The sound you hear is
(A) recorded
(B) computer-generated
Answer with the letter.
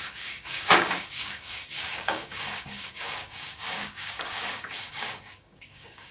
B